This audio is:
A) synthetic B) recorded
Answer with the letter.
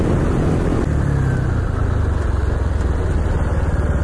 B